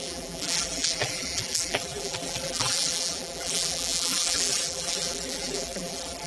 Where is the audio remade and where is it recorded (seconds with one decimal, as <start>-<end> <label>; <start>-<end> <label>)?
0.0-6.3 remade